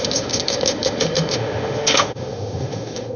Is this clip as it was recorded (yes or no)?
no